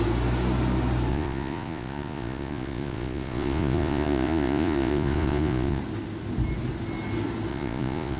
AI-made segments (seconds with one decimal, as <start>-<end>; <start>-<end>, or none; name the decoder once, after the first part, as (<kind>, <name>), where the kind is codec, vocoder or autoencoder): 1.1-5.8 (vocoder, Vocos); 7.5-8.2